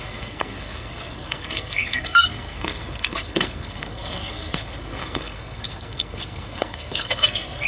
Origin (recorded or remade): remade